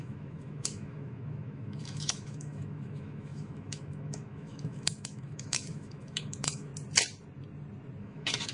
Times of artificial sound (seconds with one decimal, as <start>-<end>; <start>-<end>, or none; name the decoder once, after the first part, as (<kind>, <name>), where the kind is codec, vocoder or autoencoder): 0.0-6.7 (autoencoder, DAC-VAE); 8.0-8.5